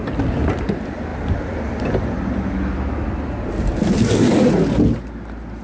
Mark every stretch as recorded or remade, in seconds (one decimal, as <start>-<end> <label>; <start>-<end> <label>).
0.0-5.6 recorded